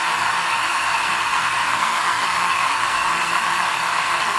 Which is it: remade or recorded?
remade